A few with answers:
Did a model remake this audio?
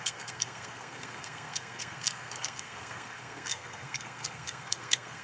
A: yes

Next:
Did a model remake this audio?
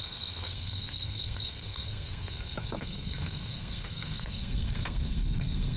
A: yes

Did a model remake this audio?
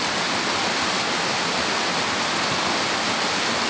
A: no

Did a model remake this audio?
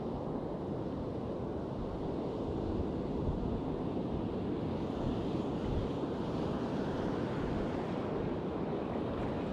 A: no